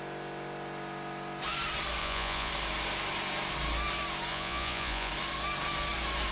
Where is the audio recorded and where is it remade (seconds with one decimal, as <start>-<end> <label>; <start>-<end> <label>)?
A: 0.0-2.0 recorded; 2.0-2.5 remade; 2.5-4.3 recorded; 4.3-5.1 remade; 5.1-6.3 recorded